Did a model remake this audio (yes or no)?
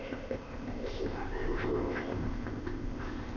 yes